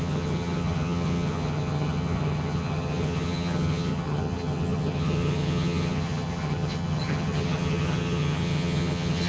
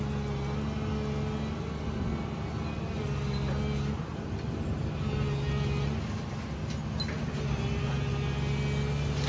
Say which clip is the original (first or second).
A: second